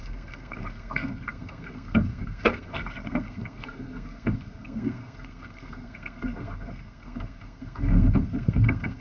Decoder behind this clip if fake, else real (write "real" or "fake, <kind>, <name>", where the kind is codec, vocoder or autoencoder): fake, codec, SNAC